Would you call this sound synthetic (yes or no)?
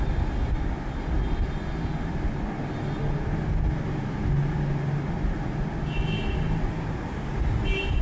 no